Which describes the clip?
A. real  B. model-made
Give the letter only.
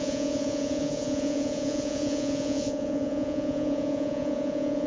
B